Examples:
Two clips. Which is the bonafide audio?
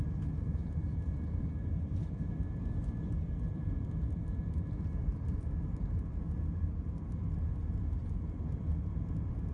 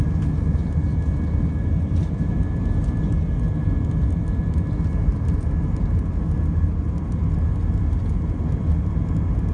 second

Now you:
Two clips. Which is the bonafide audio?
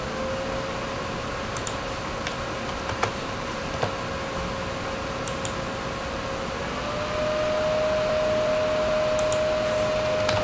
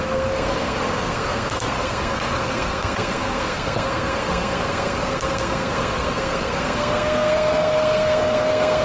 first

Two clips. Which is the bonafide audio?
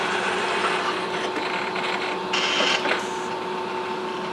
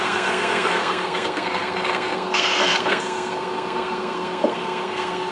first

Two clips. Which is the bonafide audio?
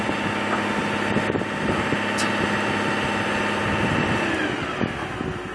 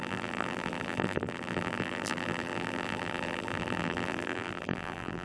first